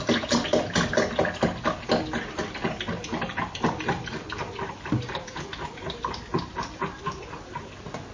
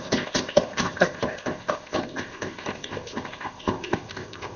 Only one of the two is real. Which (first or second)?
first